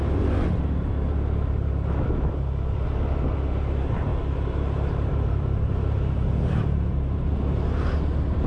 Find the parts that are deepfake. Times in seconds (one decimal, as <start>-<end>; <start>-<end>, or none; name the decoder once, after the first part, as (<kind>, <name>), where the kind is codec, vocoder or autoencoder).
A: 4.1-7.3 (vocoder, BigVGAN v2)